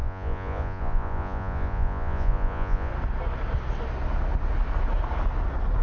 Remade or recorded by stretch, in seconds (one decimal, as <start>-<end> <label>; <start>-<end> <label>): 0.0-2.9 remade; 2.9-5.8 recorded